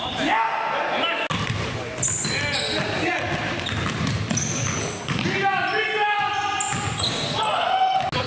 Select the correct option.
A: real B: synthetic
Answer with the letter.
A